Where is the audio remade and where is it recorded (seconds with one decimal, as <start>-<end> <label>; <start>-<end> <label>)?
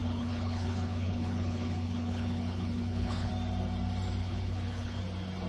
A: 0.0-3.3 remade; 3.3-4.2 recorded; 4.2-5.0 remade; 5.0-5.5 recorded